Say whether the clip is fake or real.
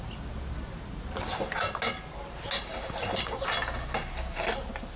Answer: real